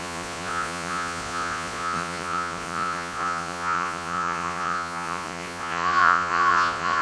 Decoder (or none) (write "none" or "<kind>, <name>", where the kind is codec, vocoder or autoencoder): vocoder, Vocos